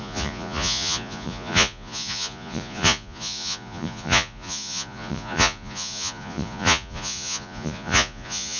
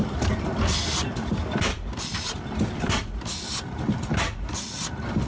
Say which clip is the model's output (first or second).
first